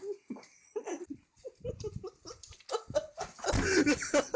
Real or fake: real